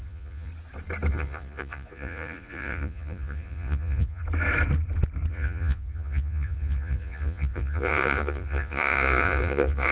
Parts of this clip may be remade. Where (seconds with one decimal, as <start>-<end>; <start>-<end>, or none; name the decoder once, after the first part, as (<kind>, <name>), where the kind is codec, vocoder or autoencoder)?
0.0-0.5 (vocoder, Vocos); 1.1-4.2; 5.3-9.9